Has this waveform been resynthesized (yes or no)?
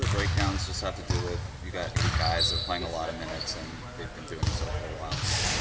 no